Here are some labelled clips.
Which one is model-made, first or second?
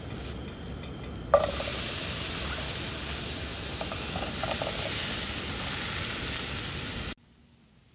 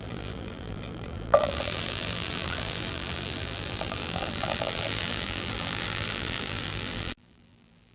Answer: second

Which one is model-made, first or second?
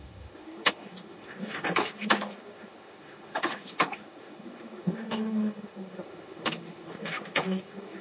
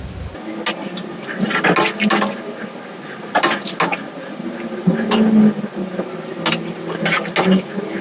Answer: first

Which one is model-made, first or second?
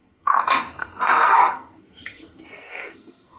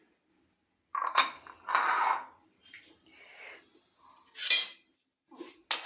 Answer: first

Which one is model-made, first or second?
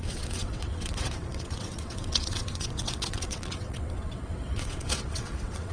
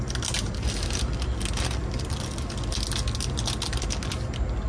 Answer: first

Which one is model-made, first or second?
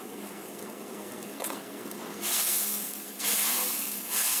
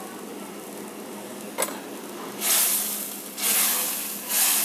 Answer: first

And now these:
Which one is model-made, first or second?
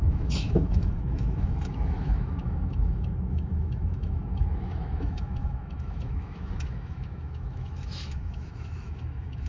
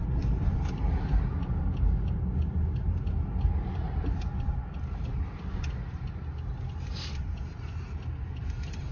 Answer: first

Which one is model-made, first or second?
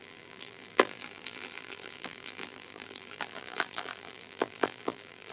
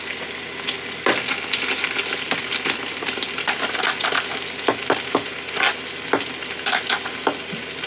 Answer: first